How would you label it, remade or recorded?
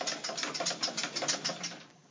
recorded